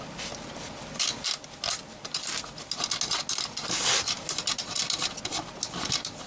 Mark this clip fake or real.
real